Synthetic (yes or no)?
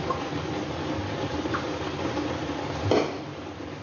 no